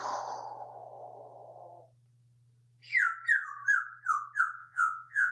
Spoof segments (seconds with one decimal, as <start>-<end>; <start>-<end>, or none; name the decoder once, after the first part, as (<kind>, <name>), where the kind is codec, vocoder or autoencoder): 4.6-5.3 (vocoder, Vocos)